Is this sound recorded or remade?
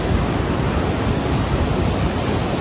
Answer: recorded